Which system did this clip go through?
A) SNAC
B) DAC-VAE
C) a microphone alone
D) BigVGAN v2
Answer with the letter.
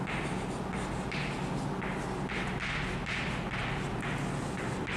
C